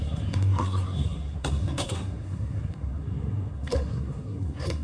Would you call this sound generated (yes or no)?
yes